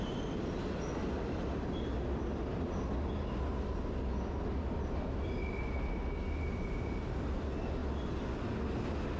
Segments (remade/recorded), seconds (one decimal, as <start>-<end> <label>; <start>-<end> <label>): 0.0-7.8 recorded; 7.8-8.7 remade; 8.7-9.2 recorded